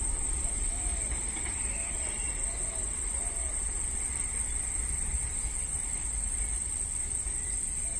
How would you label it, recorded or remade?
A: recorded